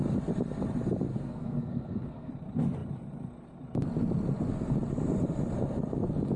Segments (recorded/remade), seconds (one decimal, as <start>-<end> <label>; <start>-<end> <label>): 0.0-1.1 recorded; 1.1-2.3 remade; 2.3-6.4 recorded